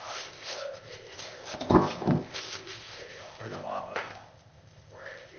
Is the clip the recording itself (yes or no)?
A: no